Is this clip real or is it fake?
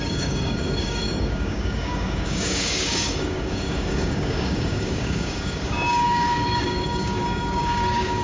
fake